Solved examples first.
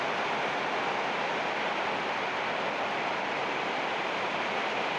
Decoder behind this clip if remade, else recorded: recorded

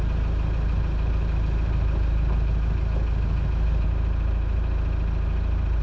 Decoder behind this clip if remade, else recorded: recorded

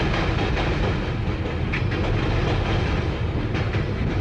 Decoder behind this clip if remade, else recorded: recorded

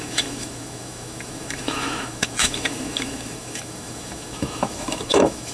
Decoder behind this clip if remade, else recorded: remade, autoencoder, DAC-VAE